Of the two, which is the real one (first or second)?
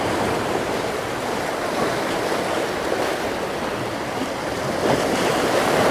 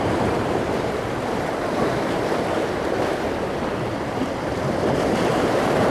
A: first